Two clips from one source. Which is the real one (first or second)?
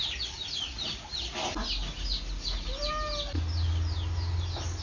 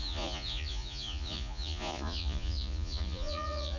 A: first